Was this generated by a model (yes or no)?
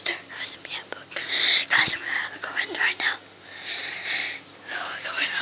no